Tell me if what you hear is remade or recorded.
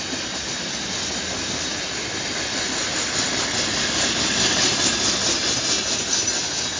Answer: recorded